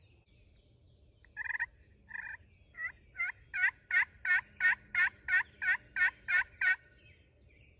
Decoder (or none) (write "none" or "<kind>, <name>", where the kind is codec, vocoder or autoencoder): none